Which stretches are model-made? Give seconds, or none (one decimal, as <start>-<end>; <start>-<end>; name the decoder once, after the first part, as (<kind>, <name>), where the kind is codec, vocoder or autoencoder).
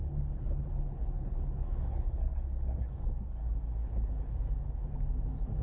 0.0-3.4 (codec, HILCodec); 3.8-4.3